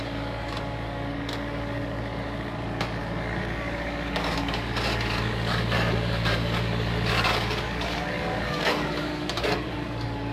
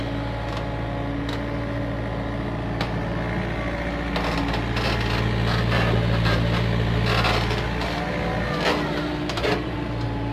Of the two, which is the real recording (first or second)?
second